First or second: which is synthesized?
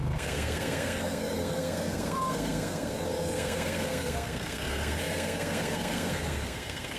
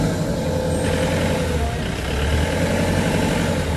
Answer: first